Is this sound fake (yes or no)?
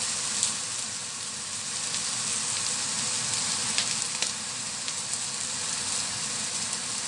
no